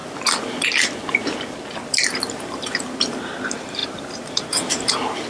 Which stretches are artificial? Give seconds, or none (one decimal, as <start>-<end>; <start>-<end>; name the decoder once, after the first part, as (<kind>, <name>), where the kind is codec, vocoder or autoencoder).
1.7-5.3 (vocoder, BigVGAN v2)